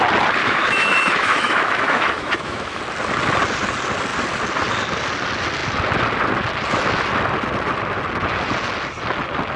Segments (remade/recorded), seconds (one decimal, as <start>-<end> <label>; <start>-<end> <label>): 0.0-0.4 recorded; 0.4-2.8 remade; 2.8-9.6 recorded